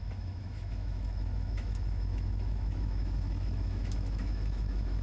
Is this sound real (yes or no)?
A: no